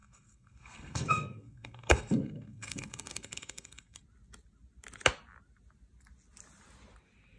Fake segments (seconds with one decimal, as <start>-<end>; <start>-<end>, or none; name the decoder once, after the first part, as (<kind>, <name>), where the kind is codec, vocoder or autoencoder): 0.0-4.0 (codec, SNAC)